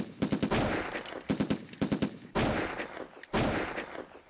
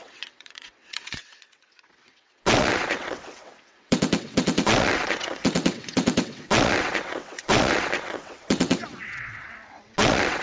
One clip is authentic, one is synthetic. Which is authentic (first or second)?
first